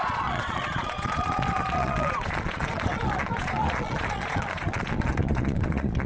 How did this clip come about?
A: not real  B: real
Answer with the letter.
A